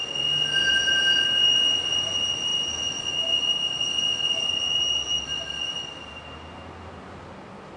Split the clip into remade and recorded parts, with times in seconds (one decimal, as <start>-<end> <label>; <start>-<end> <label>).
0.0-7.8 recorded